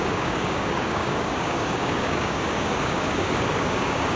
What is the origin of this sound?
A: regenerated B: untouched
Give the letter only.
A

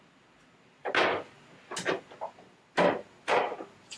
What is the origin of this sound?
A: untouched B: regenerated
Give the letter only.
A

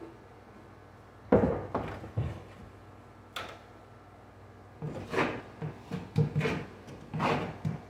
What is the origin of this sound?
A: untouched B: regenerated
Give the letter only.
A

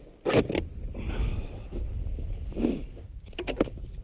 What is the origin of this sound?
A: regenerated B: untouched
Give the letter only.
B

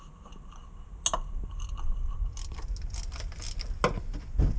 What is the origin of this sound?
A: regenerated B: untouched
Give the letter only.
B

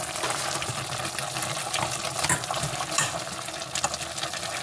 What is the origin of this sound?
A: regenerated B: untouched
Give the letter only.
B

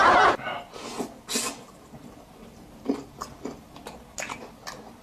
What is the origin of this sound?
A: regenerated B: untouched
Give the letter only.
B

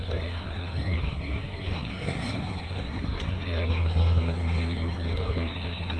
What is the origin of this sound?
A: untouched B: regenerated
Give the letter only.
B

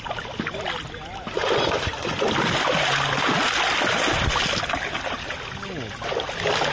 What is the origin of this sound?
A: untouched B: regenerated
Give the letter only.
A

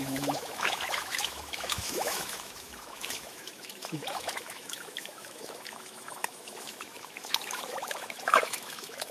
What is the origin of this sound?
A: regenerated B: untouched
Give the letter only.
A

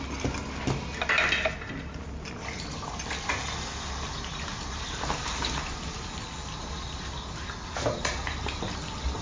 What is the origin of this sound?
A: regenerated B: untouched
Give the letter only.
B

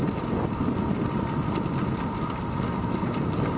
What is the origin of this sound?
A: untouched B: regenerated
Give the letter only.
A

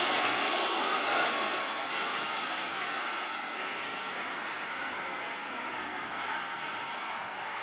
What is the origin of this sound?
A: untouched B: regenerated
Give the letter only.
B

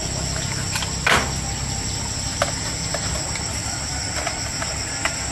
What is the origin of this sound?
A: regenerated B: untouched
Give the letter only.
B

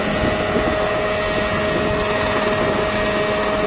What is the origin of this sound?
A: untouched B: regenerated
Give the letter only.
A